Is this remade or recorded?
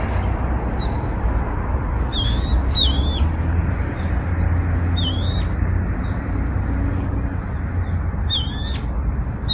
recorded